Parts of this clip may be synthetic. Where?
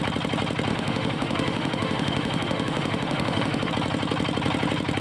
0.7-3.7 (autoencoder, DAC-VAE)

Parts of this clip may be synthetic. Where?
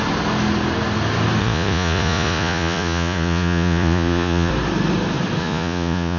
1.4-4.5 (vocoder, Vocos); 5.4-6.2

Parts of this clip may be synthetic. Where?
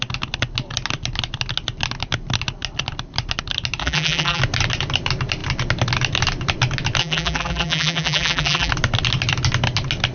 3.8-4.4 (vocoder, BigVGAN v2); 7.0-8.7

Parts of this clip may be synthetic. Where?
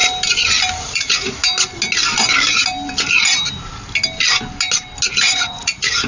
0.8-1.4 (vocoder, Vocos); 5.1-6.1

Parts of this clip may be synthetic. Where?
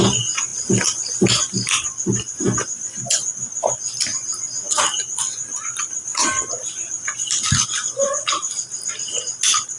0.5-2.3 (vocoder, BigVGAN v2)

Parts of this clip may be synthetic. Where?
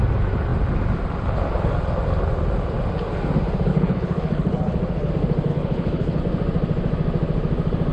3.7-5.1 (codec, HILCodec); 5.5-6.2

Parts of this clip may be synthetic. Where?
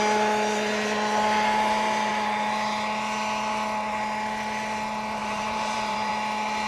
5.2-6.1 (vocoder, BigVGAN v2)